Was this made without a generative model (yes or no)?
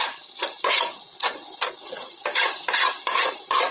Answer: no